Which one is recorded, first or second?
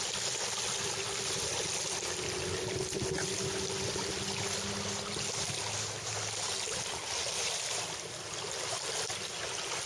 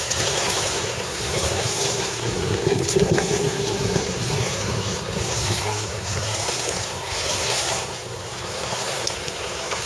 first